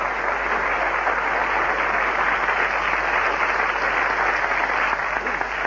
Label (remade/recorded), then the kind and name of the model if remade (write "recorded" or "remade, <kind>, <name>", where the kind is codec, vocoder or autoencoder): recorded